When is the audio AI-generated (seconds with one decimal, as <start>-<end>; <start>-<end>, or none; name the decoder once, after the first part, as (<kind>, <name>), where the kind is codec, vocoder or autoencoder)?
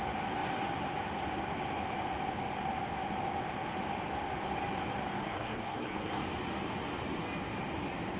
5.2-6.2 (codec, SNAC)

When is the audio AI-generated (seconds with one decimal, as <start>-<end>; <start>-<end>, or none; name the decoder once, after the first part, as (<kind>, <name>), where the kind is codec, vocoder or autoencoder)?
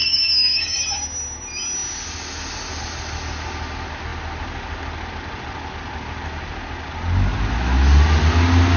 0.0-0.8 (codec, DAC)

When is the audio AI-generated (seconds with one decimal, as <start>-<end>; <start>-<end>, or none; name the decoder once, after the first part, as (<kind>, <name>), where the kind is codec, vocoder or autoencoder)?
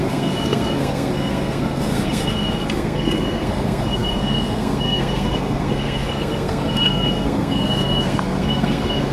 0.0-9.1 (codec, SNAC)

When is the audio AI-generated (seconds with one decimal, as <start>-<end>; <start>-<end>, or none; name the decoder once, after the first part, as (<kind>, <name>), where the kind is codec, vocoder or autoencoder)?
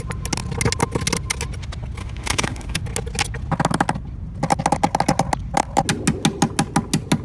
2.0-2.8 (autoencoder, DAC-VAE)